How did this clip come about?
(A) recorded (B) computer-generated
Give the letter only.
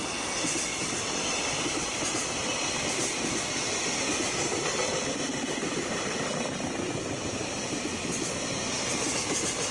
A